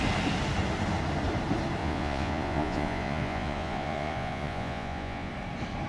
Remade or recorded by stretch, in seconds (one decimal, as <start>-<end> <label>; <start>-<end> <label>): 0.0-1.8 recorded; 1.8-5.3 remade; 5.3-5.9 recorded